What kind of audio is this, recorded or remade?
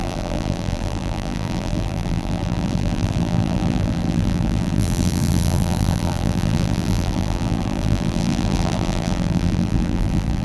remade